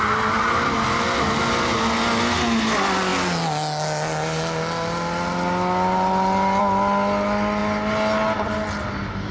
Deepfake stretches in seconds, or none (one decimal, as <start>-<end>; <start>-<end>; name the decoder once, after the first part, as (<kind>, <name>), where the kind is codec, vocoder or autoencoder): none